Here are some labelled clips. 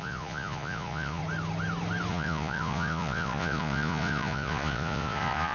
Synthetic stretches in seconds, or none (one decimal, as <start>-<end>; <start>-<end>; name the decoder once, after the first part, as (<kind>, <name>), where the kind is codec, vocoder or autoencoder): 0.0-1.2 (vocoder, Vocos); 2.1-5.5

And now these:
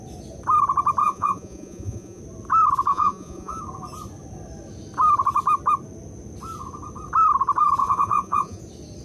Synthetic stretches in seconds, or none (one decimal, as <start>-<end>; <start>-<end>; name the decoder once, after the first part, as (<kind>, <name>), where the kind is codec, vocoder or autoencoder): 1.0-2.2 (vocoder, Vocos); 2.9-3.6; 7.8-8.6

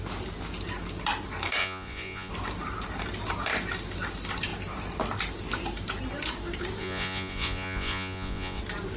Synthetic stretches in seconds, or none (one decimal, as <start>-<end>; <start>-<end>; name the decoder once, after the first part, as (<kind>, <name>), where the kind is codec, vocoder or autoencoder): 1.6-2.3 (vocoder, Vocos); 6.8-8.6

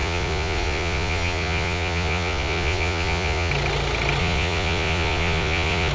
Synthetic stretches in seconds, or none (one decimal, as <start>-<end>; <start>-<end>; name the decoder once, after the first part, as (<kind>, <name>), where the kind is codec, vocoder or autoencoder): 0.0-3.5 (vocoder, Vocos); 4.2-5.9

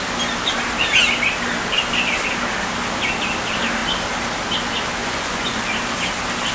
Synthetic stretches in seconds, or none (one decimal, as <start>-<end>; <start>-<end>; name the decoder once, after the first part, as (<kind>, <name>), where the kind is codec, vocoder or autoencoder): 5.0-5.6 (vocoder, Vocos)

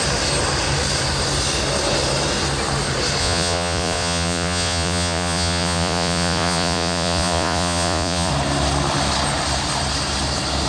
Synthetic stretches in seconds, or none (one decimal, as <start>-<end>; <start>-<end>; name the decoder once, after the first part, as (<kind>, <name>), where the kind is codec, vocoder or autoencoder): 3.2-8.3 (vocoder, Vocos)

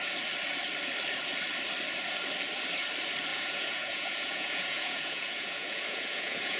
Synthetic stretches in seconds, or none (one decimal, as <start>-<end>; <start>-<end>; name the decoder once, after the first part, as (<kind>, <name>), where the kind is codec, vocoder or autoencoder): 3.3-6.6 (vocoder, Vocos)